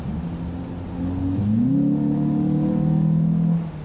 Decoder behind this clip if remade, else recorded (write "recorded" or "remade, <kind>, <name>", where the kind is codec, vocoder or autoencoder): recorded